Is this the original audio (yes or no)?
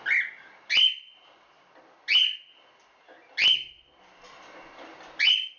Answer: yes